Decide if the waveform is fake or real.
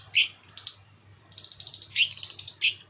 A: real